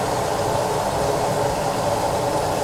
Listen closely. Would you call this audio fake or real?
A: real